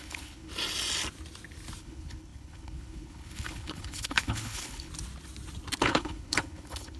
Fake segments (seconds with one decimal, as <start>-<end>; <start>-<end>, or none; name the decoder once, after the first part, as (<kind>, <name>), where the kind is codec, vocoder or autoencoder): 0.0-0.5 (codec, HILCodec); 1.8-4.9; 5.8-7.0